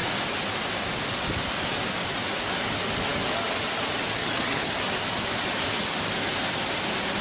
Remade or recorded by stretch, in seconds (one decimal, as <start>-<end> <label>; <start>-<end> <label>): 0.0-4.2 recorded; 4.2-4.7 remade; 4.7-7.2 recorded